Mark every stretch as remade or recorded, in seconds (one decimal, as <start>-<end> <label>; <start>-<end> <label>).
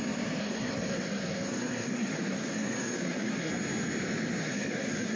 0.0-0.4 recorded; 0.4-3.5 remade; 3.5-4.4 recorded; 4.4-5.2 remade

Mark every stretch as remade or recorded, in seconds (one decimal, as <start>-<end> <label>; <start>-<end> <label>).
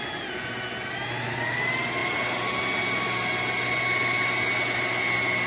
0.0-5.5 recorded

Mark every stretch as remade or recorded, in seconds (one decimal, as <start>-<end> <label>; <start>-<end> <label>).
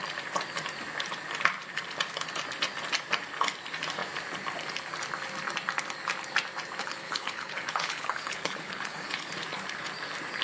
0.0-6.8 recorded; 6.8-9.3 remade; 9.3-10.4 recorded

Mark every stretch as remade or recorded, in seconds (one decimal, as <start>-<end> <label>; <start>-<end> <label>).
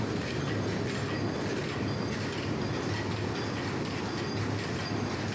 0.0-5.3 recorded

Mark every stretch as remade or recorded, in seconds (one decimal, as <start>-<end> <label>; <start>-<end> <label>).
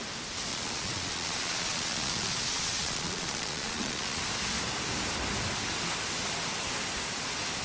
0.0-0.5 recorded; 0.5-4.2 remade; 4.2-7.6 recorded